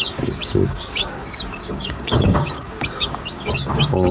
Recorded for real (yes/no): no